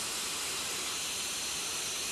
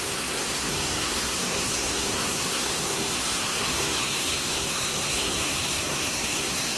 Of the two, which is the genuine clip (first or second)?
first